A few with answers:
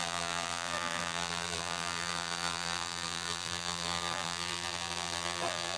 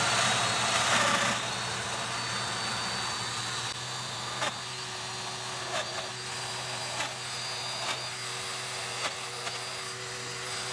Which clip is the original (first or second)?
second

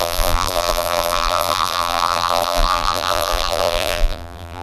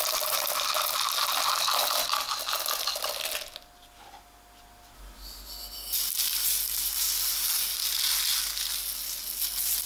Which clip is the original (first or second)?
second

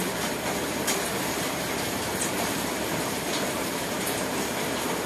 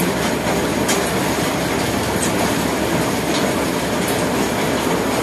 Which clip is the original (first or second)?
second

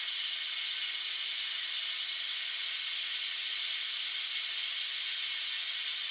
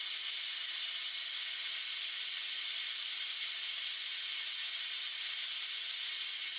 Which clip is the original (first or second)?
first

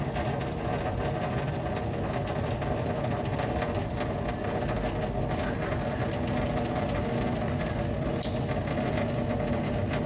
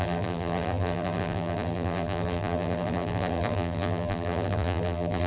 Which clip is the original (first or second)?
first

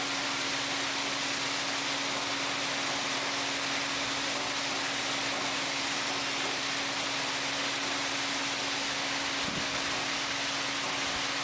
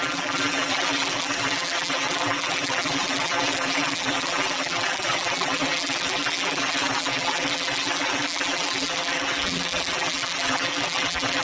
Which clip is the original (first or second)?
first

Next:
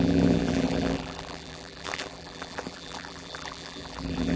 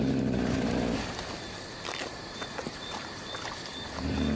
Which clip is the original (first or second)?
second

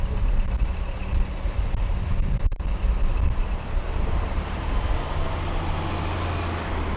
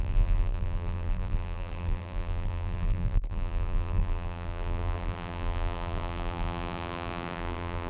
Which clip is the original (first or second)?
first